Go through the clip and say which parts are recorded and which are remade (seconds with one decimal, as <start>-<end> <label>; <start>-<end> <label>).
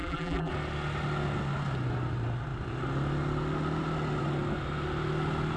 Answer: 0.0-0.5 remade; 0.5-5.6 recorded